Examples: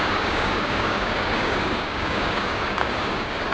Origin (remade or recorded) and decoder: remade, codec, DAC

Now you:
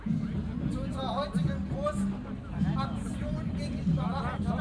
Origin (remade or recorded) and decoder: recorded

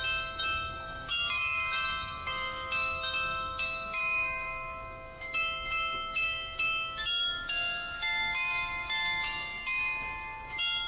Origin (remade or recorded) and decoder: remade, codec, DAC